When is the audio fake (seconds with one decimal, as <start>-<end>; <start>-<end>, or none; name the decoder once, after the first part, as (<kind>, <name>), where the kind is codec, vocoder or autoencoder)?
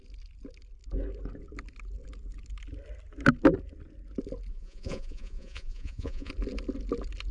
4.5-6.3 (vocoder, Vocos)